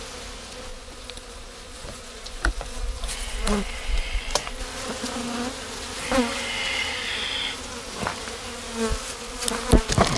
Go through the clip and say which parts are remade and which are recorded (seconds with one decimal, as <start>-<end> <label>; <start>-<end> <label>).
0.0-0.7 recorded; 0.7-4.6 remade; 4.6-10.2 recorded